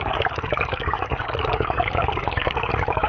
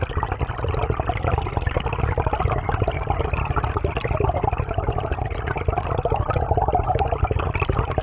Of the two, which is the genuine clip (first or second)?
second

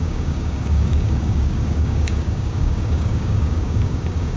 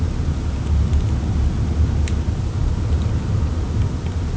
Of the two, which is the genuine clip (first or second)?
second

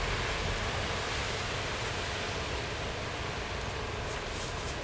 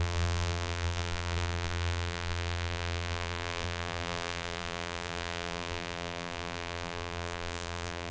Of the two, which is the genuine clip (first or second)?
first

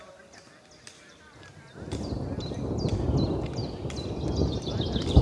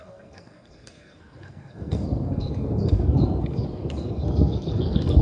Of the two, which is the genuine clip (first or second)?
first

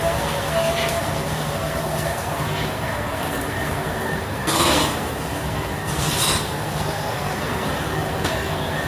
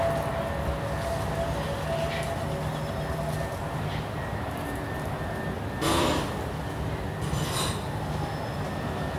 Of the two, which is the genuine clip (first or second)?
second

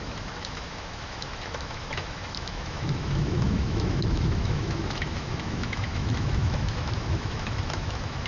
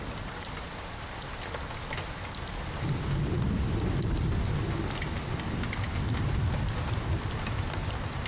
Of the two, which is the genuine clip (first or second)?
second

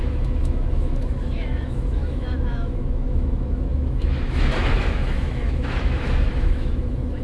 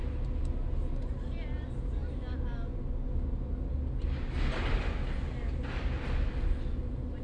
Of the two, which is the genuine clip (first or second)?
second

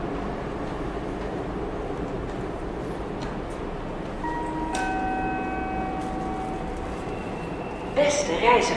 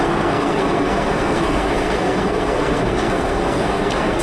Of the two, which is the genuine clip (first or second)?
first